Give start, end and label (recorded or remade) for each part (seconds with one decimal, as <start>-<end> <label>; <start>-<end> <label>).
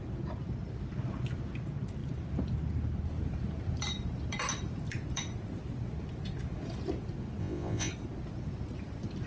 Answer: 0.0-7.4 recorded; 7.4-7.9 remade; 7.9-9.3 recorded